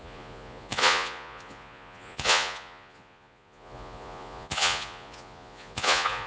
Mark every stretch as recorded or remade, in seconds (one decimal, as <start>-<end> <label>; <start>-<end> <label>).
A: 0.0-6.3 remade